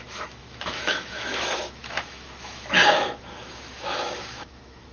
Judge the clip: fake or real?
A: fake